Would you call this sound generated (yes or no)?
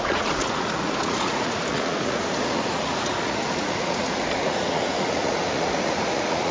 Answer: yes